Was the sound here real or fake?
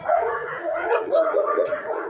fake